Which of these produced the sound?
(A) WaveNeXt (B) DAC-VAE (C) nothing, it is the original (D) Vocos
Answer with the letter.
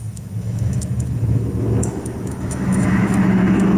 B